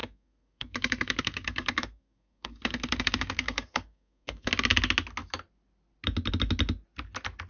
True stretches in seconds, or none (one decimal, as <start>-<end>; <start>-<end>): 4.5-7.5